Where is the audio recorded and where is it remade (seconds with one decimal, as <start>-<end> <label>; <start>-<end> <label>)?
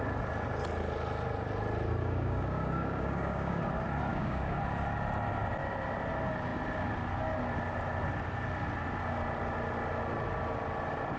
0.0-2.0 recorded; 2.0-3.6 remade; 3.6-4.1 recorded; 4.1-4.6 remade; 4.6-11.2 recorded